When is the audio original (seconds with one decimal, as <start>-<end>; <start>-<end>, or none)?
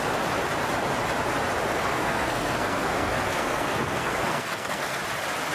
0.0-1.7; 5.0-5.5